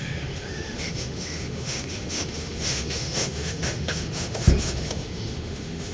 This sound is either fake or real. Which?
fake